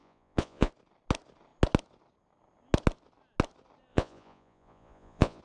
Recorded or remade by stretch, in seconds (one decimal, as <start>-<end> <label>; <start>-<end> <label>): 0.0-0.7 remade; 0.7-3.9 recorded; 3.9-5.4 remade